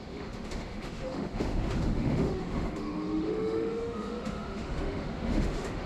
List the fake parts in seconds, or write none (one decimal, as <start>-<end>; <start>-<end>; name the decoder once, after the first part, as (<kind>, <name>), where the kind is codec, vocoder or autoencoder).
0.0-5.9 (autoencoder, DAC-VAE)